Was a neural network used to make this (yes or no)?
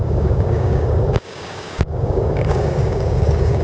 yes